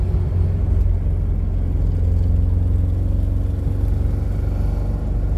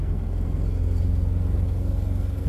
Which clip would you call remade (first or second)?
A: second